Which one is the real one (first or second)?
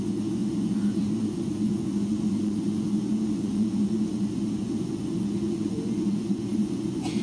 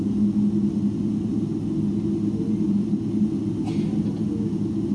second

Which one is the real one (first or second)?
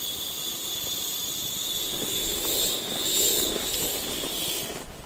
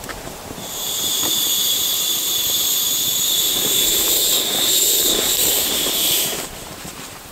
first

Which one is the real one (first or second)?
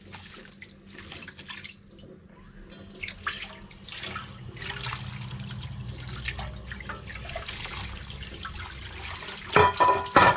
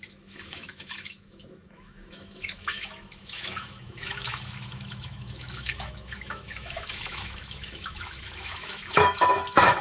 first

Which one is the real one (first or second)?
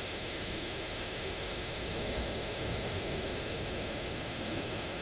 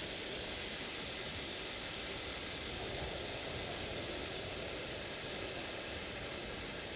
second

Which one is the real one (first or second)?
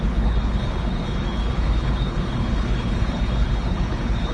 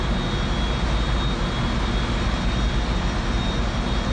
second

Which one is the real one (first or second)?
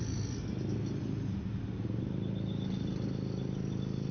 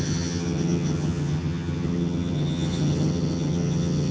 first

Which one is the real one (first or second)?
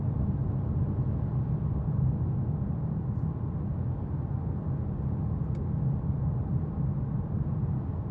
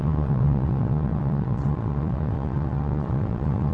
first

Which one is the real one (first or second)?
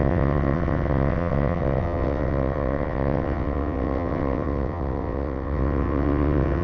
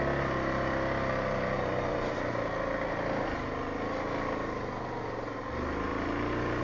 second